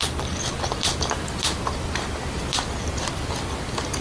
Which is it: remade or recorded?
recorded